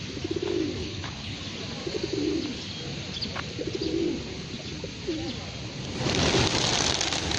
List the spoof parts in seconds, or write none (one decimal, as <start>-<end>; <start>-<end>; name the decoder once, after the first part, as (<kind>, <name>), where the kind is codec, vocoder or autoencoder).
0.8-1.4 (codec, HILCodec)